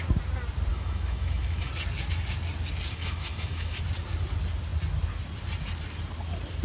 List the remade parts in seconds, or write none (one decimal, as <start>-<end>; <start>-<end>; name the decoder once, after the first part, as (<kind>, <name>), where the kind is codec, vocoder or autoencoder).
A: 0.7-1.7 (autoencoder, DAC-VAE); 2.9-3.8